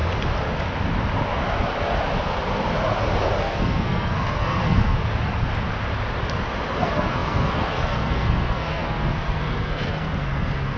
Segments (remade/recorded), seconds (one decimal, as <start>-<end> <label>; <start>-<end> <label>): 0.0-3.4 recorded; 3.4-5.0 remade; 5.0-6.8 recorded; 6.8-10.8 remade